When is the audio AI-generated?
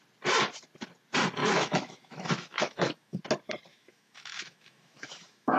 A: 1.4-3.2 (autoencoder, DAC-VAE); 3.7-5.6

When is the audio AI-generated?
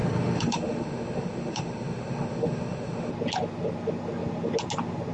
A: 0.0-3.1 (autoencoder, DAC-VAE)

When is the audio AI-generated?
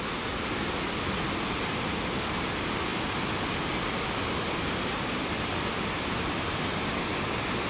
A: none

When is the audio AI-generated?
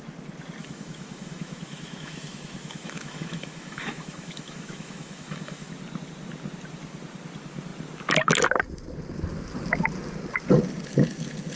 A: 0.6-5.7 (autoencoder, DAC-VAE)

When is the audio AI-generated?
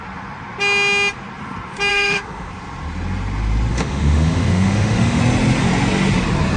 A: 1.9-2.5 (autoencoder, DAC-VAE); 3.7-5.2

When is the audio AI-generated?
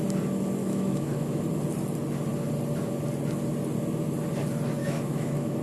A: 0.6-1.4 (autoencoder, DAC-VAE); 4.8-5.6